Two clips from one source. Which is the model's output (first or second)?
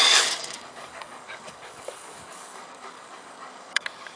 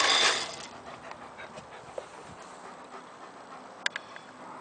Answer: first